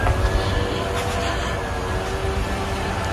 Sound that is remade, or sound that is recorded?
recorded